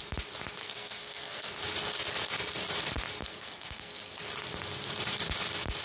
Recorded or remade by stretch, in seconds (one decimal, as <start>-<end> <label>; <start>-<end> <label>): 0.0-0.6 recorded; 0.6-1.5 remade; 1.5-3.2 recorded; 3.2-4.2 remade; 4.2-5.8 recorded